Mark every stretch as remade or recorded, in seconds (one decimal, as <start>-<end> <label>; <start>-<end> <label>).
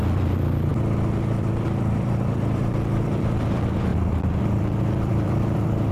0.0-5.9 remade